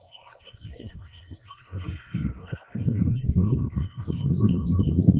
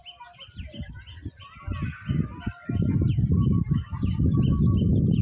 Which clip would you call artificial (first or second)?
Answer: first